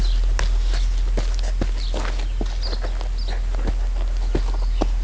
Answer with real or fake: real